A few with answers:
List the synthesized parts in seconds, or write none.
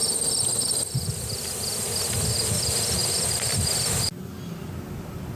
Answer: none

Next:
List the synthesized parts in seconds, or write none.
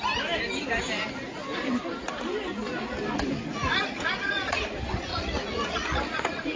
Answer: 3.6-4.6 (vocoder, Vocos); 5.1-6.6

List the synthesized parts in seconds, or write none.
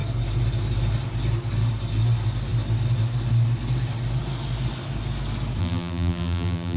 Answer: 5.6-6.8 (vocoder, BigVGAN v2)